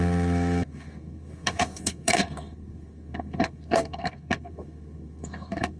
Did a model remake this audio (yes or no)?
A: yes